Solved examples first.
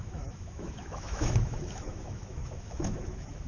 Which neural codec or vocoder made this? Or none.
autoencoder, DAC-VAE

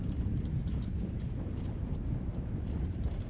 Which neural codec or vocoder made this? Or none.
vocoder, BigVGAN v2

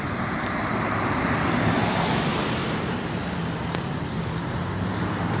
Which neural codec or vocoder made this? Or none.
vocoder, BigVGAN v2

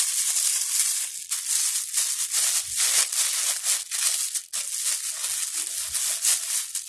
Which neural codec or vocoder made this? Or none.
none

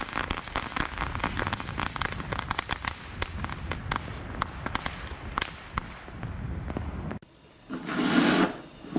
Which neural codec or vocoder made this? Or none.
none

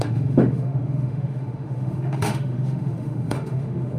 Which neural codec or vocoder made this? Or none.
autoencoder, DAC-VAE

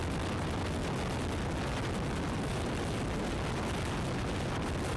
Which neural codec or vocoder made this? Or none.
none